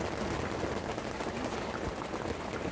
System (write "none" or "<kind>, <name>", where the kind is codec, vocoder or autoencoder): none